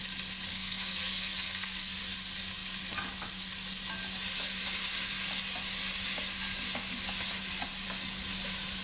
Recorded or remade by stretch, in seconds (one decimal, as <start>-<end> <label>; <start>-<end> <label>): 0.0-0.5 recorded; 0.5-2.0 remade; 2.0-8.8 recorded